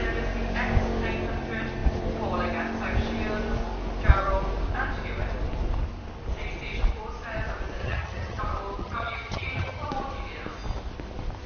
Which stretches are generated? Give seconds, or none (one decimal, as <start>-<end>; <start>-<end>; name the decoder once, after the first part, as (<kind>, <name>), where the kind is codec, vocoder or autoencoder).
7.8-8.4 (vocoder, HiFi-GAN); 8.8-9.9